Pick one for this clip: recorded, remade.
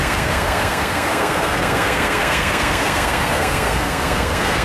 remade